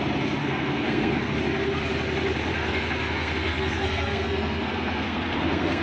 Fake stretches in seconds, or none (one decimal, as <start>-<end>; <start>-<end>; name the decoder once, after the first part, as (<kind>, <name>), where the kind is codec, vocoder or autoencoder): 0.4-1.4 (codec, SNAC); 2.5-5.8